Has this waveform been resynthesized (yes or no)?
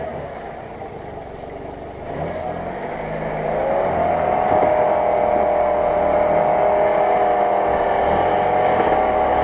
no